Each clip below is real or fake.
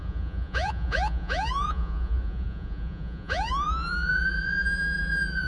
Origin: fake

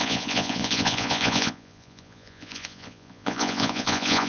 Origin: fake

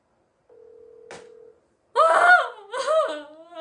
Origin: real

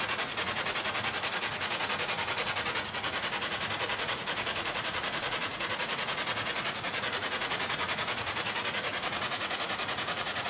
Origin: fake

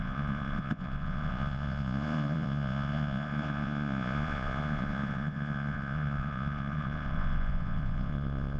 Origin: fake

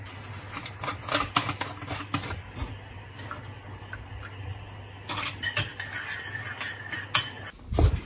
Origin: real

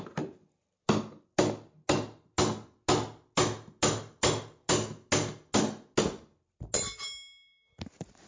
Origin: real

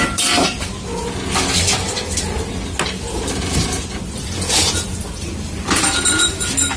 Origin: real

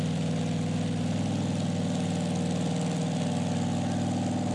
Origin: real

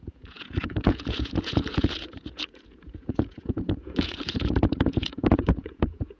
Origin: fake